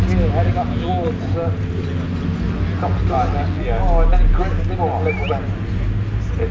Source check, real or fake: real